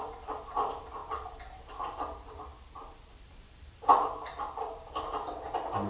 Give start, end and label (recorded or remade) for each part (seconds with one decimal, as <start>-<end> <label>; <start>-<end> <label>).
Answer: 0.0-2.5 remade; 2.5-3.1 recorded; 3.1-5.9 remade